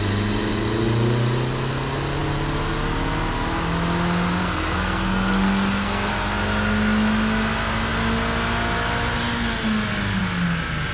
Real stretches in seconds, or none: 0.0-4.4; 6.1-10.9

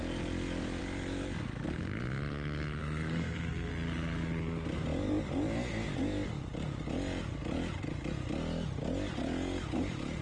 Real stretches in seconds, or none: 0.0-2.8; 3.7-10.2

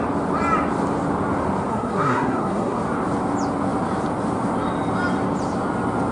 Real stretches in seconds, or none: 0.0-1.7; 2.8-6.1

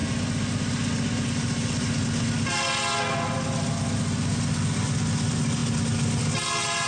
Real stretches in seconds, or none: 0.0-6.9

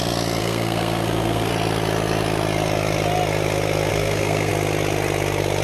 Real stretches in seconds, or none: 0.0-0.4; 1.5-3.9; 4.5-5.6